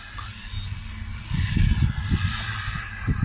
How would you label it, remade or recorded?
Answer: recorded